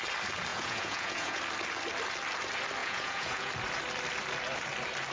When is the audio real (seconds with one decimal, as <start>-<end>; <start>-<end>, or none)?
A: 0.0-0.5; 1.4-2.8; 3.5-5.1